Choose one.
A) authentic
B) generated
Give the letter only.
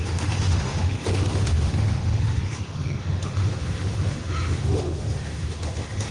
B